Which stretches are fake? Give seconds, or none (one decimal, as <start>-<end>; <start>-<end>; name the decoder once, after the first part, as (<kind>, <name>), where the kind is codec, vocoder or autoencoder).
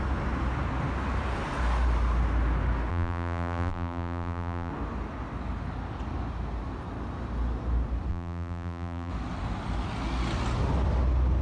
2.9-4.7 (vocoder, BigVGAN v2); 8.1-9.1